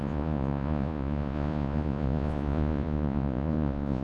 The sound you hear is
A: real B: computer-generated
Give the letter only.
B